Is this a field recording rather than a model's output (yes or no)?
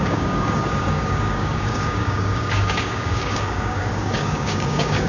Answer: no